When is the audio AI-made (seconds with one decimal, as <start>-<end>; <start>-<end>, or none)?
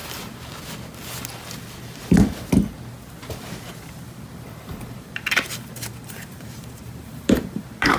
4.8-8.0